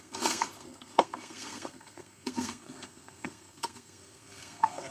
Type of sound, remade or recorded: remade